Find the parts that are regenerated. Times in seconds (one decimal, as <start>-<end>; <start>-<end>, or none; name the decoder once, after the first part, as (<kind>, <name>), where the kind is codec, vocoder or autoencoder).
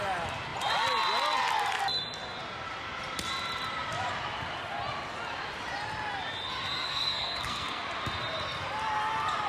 6.8-7.8 (codec, SNAC)